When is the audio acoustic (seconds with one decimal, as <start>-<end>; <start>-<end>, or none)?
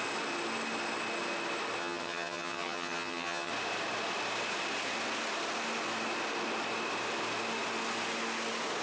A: 0.0-1.8; 3.5-8.8